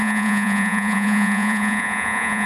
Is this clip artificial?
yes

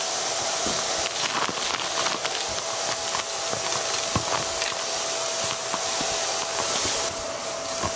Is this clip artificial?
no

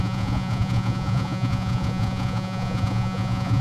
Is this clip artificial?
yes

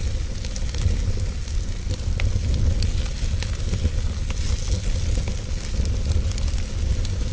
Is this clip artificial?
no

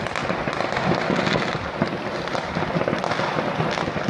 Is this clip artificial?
no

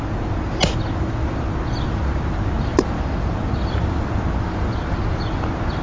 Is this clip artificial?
no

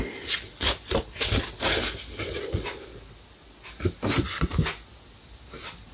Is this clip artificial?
no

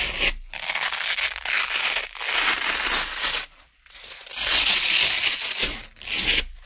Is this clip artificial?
no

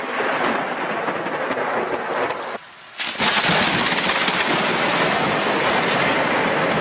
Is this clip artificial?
no